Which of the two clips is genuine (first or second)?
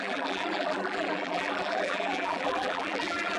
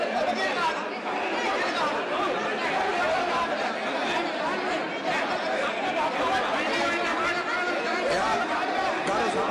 second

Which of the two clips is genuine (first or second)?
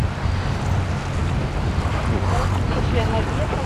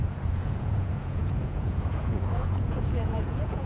first